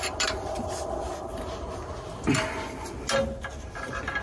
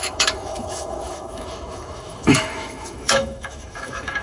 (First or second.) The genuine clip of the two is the first